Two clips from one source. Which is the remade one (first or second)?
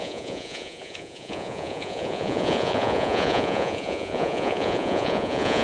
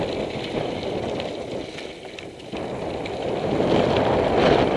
first